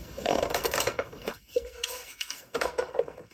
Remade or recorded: remade